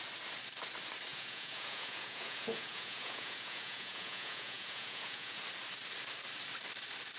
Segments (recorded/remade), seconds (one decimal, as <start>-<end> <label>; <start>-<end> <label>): 0.0-1.1 recorded; 1.1-5.4 remade; 5.4-7.2 recorded